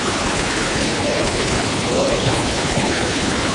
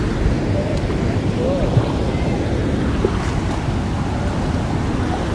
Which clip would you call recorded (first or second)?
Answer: second